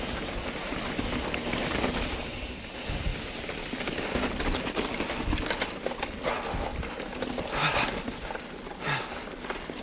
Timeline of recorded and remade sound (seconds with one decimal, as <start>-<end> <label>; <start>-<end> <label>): 0.0-9.8 recorded